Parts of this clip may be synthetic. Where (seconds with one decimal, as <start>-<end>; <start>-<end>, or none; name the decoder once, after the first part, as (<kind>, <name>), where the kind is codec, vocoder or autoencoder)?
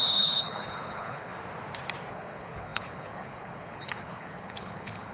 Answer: 0.0-1.3 (codec, HILCodec); 2.1-5.1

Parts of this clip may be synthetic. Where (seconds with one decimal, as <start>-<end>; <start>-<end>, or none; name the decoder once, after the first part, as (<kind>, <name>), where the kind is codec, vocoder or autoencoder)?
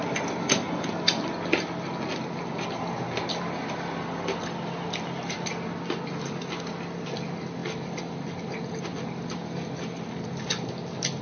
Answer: none